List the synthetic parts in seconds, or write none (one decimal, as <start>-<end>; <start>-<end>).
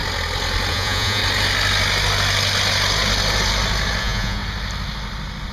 0.7-1.2; 4.0-4.4